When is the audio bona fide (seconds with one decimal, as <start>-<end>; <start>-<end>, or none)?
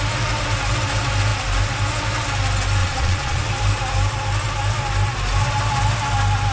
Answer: 0.0-2.8; 3.4-6.5